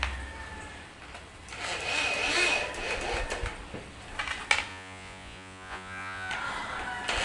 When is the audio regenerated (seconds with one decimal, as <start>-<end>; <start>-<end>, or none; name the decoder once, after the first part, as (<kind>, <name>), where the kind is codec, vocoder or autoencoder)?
4.7-6.3 (vocoder, Vocos)